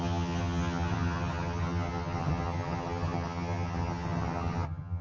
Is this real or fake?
fake